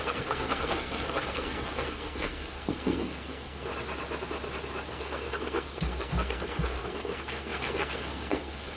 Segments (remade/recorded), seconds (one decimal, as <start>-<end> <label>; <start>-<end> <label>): 0.0-3.7 remade; 3.7-4.9 recorded; 4.9-8.8 remade